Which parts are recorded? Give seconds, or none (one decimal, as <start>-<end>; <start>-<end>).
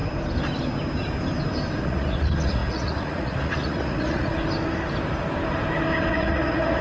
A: 0.0-1.8; 4.3-6.1